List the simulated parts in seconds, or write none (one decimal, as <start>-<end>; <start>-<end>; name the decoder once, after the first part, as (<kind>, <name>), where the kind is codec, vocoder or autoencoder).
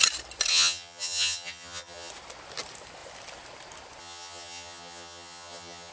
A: 0.5-2.1 (vocoder, HiFi-GAN); 4.0-5.9